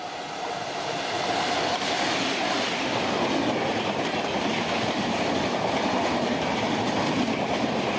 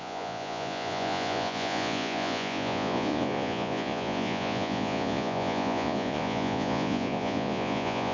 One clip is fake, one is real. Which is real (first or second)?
first